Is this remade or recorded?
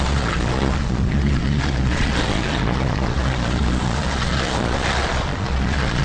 remade